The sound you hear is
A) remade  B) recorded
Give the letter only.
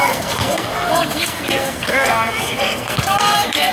A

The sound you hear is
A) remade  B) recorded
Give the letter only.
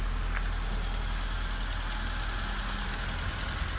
B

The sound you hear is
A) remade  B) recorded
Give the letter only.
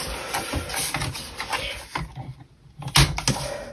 B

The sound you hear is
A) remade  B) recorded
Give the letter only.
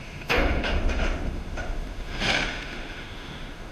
A